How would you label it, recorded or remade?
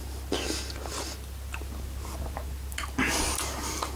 recorded